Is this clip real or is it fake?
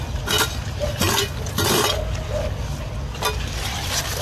real